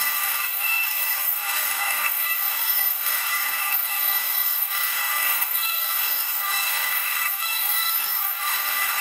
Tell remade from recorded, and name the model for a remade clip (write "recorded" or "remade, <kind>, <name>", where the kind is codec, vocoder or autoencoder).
remade, codec, DAC